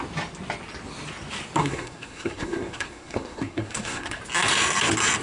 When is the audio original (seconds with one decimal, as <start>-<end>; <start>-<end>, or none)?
0.0-1.6; 4.2-5.2